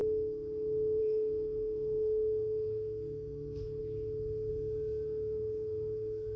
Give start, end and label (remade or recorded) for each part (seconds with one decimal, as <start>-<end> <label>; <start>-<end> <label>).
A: 0.0-1.0 recorded; 1.0-3.8 remade; 3.8-4.5 recorded; 4.5-6.4 remade